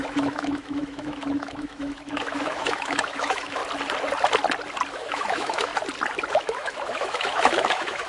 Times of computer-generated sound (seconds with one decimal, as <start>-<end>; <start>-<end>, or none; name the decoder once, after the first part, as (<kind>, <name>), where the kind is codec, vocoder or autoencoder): 0.0-3.6 (autoencoder, DAC-VAE); 4.9-5.7; 6.3-8.1